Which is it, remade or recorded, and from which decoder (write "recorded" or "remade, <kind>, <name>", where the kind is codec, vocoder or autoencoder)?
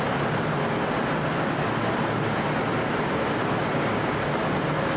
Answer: recorded